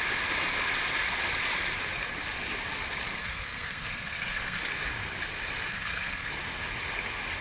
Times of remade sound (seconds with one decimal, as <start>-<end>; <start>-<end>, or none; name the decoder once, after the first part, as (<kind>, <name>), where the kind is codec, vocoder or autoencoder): 3.2-4.6 (codec, SNAC); 5.7-6.3